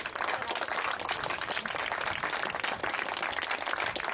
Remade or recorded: recorded